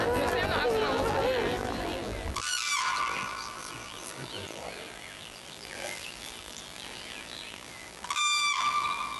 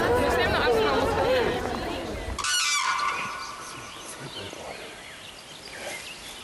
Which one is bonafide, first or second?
second